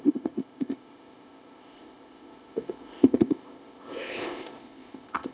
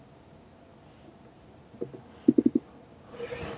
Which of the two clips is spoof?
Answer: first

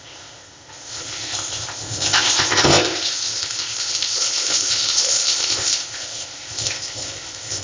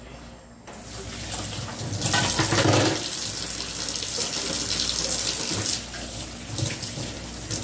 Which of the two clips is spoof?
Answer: first